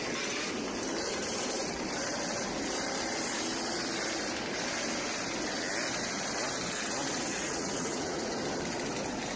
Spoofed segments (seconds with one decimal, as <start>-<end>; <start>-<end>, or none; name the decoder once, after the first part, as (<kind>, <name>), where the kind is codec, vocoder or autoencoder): 7.3-8.3 (vocoder, Vocos)